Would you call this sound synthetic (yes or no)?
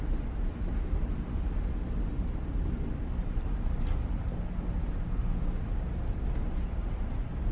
no